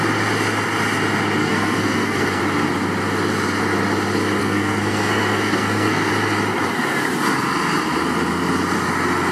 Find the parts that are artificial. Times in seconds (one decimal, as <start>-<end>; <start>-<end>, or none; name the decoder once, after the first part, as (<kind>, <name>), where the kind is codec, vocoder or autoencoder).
1.4-2.4 (codec, SNAC); 4.4-6.1

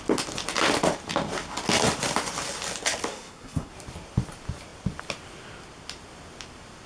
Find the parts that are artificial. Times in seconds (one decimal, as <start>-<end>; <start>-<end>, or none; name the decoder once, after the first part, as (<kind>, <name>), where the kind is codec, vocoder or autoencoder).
3.1-3.7 (codec, SNAC)

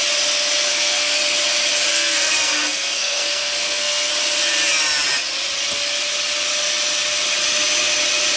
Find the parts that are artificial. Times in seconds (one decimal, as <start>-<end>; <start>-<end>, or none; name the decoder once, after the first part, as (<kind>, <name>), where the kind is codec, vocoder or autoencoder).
0.7-1.2 (codec, SNAC); 1.9-4.1